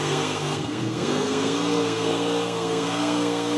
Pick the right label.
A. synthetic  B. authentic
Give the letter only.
A